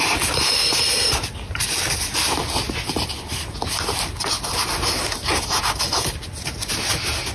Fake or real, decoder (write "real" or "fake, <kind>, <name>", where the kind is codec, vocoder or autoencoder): real